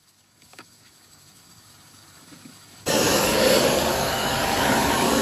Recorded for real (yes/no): no